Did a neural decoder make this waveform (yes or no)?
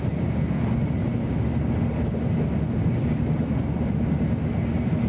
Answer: no